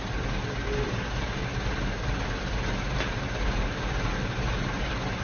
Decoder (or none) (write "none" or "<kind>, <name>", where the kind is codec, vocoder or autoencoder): none